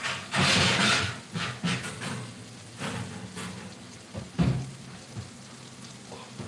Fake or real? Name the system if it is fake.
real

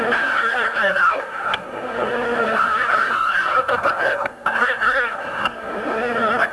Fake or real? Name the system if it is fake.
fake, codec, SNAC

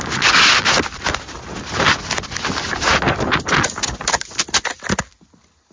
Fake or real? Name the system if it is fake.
real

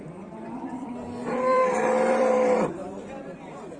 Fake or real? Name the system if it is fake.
fake, vocoder, BigVGAN v2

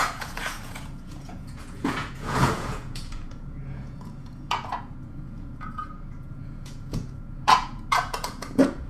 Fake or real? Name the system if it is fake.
fake, vocoder, Vocos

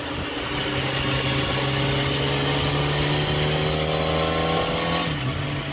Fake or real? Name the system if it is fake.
real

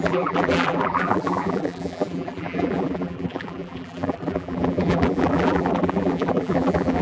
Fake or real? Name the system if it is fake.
fake, vocoder, BigVGAN v2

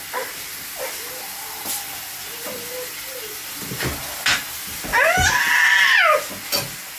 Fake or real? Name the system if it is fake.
real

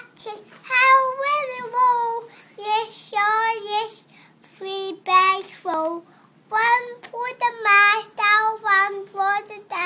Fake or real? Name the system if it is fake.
real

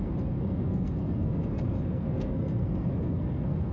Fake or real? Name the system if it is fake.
fake, codec, SNAC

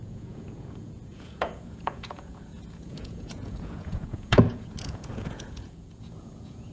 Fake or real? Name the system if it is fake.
fake, vocoder, Vocos